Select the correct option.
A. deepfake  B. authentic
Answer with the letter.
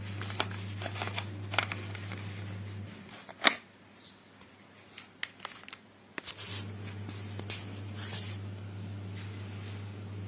B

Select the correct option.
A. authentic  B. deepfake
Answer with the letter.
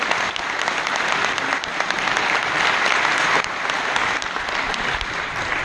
A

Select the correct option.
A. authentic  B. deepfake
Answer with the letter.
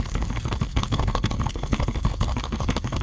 B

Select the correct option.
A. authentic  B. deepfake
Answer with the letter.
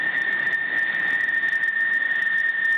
A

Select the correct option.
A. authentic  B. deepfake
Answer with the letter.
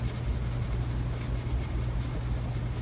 A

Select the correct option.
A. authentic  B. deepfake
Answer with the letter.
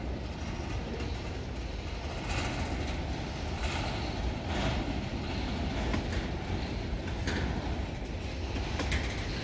A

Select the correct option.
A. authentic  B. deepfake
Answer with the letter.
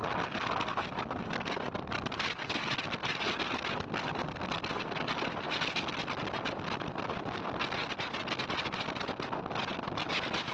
A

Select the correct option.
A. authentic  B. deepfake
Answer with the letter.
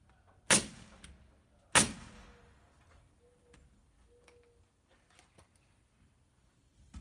A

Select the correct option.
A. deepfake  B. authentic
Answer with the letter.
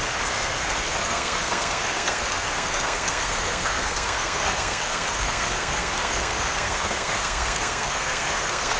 A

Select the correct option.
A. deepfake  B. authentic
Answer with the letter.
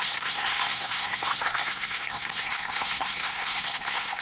A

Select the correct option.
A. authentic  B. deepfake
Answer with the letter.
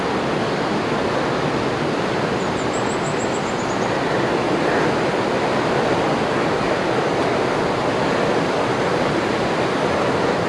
A